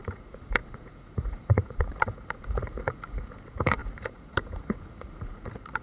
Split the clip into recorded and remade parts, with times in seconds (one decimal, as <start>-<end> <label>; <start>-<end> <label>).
0.0-5.8 remade